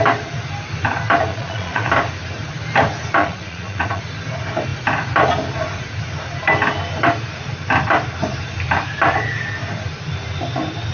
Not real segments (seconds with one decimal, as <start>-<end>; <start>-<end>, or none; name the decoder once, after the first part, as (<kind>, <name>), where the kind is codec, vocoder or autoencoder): 1.3-1.9 (vocoder, Vocos); 3.2-4.0